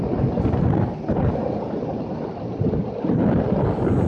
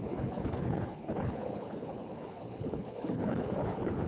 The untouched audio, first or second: first